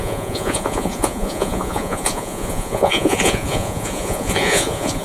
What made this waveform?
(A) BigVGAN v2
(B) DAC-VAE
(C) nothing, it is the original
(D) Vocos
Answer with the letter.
D